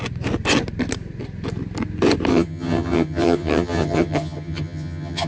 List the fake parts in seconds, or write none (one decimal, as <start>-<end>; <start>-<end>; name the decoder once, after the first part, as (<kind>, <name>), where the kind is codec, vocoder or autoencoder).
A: 2.3-5.3 (vocoder, HiFi-GAN)

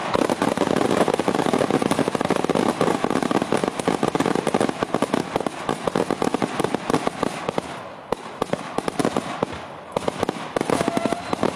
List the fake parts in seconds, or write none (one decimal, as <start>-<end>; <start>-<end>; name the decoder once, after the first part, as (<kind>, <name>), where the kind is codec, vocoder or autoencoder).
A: 0.0-3.6 (vocoder, BigVGAN v2); 7.0-9.0; 9.8-11.6

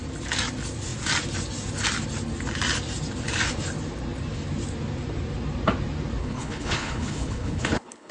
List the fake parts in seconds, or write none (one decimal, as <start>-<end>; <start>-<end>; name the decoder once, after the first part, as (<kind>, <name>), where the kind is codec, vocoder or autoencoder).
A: 6.2-8.1 (codec, HILCodec)

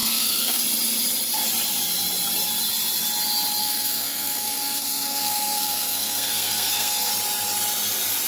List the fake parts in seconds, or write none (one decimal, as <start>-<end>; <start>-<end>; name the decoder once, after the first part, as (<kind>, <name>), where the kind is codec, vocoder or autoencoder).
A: 0.0-0.6 (codec, SNAC); 3.6-7.1

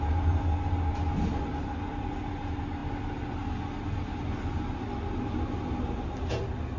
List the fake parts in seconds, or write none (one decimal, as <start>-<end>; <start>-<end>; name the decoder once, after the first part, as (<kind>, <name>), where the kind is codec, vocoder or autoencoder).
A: none

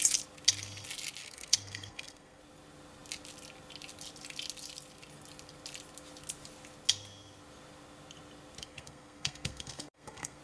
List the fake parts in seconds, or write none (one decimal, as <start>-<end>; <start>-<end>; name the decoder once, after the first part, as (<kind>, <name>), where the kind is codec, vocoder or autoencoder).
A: 1.2-2.4 (codec, SNAC); 8.6-10.4

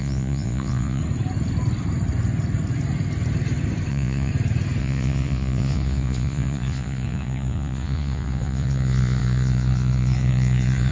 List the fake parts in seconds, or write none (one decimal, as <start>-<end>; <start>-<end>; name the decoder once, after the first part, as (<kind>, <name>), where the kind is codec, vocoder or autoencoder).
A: 0.0-1.0 (vocoder, Vocos); 3.9-4.3; 4.8-10.9